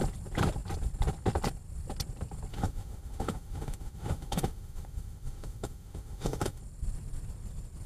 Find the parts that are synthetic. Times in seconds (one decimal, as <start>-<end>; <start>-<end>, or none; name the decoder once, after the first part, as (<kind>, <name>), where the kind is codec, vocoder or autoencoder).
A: 2.5-6.6 (autoencoder, DAC-VAE)